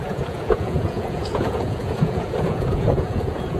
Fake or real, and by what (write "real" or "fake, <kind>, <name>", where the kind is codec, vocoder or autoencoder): fake, vocoder, Vocos